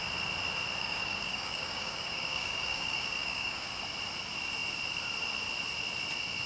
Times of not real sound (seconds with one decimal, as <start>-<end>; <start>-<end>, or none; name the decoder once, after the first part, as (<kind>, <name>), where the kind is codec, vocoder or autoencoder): 0.8-3.8 (codec, DAC)